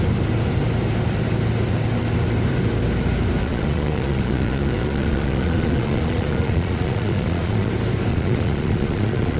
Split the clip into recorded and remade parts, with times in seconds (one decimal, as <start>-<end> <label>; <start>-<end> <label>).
0.0-3.4 recorded; 3.4-7.7 remade; 7.7-8.1 recorded; 8.1-9.4 remade